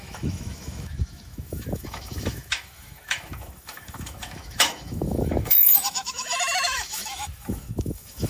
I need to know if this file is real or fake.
fake